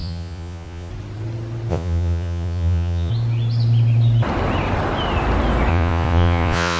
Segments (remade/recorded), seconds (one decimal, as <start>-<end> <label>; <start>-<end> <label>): 0.0-0.9 remade; 0.9-1.7 recorded; 1.7-3.1 remade; 3.1-5.7 recorded; 5.7-6.8 remade